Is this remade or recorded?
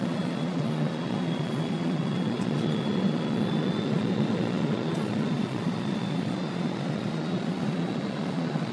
remade